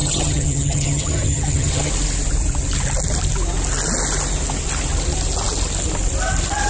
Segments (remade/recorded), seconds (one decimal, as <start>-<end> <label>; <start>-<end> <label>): 0.0-1.9 remade; 1.9-6.7 recorded